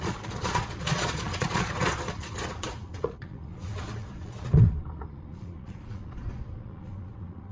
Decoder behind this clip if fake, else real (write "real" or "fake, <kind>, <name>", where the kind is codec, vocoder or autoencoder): fake, vocoder, Vocos